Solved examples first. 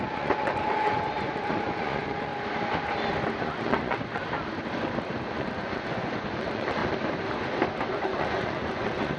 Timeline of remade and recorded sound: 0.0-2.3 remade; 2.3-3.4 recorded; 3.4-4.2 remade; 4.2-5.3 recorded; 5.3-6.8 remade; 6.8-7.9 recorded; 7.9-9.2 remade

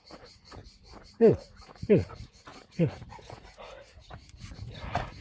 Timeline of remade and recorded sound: 0.0-0.6 remade; 0.6-1.3 recorded; 1.3-5.2 remade